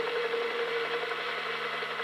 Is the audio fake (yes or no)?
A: yes